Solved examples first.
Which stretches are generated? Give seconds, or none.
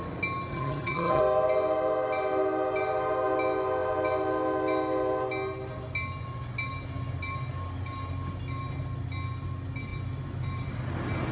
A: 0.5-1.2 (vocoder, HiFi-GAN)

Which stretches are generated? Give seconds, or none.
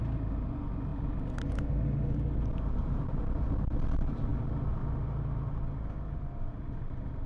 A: 2.8-3.3 (vocoder, BigVGAN v2)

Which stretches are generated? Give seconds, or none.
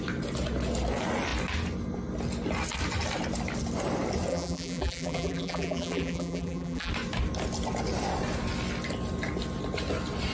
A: 4.3-6.9 (vocoder, BigVGAN v2)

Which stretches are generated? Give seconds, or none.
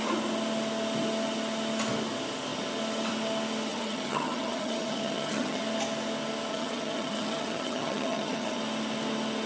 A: 3.7-5.6 (vocoder, HiFi-GAN); 6.5-8.6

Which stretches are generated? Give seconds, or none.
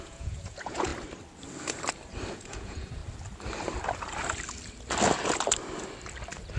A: 0.0-0.9 (vocoder, Vocos); 2.3-3.0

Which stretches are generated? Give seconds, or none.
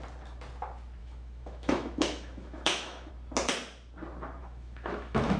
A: 1.0-3.1 (autoencoder, DAC-VAE); 4.4-5.4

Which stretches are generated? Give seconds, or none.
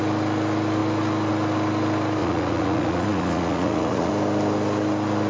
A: 2.2-4.1 (vocoder, Vocos)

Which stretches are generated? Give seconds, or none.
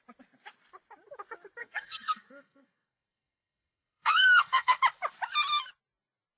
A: 1.6-4.8 (codec, SNAC)